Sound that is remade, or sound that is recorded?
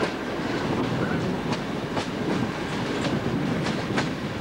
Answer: recorded